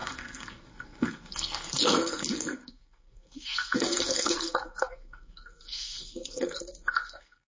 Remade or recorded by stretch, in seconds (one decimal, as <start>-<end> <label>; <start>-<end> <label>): 0.0-7.6 remade